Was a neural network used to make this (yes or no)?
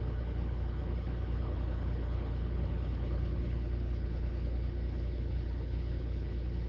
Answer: yes